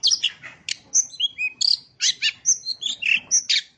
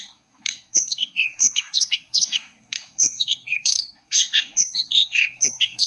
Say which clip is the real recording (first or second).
first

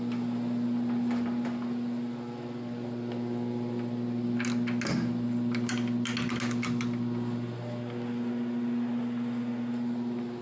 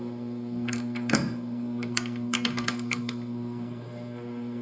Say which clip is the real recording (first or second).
first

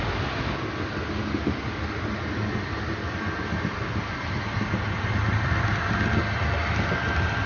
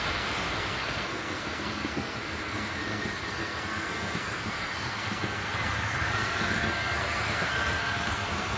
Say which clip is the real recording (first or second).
first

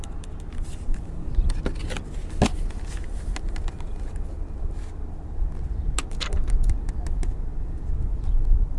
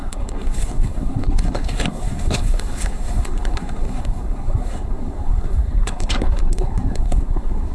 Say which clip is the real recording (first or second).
first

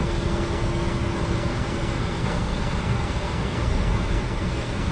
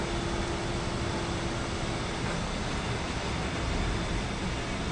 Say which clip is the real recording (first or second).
second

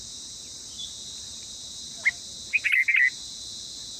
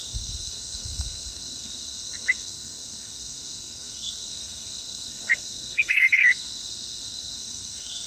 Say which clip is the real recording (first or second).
first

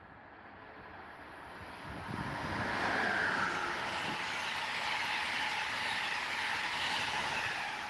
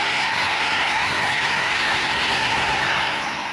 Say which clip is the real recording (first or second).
first